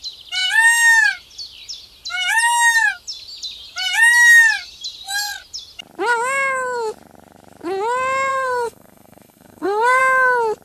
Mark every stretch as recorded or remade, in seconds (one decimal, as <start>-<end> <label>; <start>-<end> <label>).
0.0-8.3 recorded; 8.3-10.0 remade; 10.0-10.6 recorded